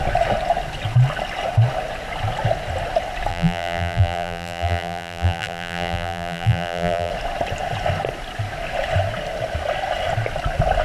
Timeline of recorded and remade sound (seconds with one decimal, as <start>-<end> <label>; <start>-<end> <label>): 0.0-3.3 recorded; 3.3-7.1 remade; 7.1-10.8 recorded